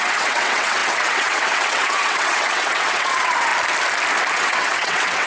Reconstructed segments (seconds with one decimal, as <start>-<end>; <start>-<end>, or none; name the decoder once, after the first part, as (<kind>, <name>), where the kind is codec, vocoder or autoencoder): 0.0-3.5 (vocoder, WaveNeXt); 4.3-5.3